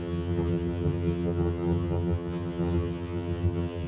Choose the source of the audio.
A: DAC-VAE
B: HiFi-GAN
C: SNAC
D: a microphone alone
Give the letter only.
B